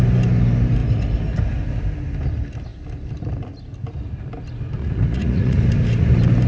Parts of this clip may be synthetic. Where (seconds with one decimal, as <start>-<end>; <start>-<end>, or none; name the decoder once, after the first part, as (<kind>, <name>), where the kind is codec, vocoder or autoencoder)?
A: 4.8-5.6 (vocoder, Vocos)